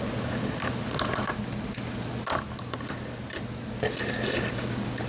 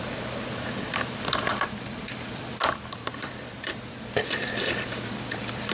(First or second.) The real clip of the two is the first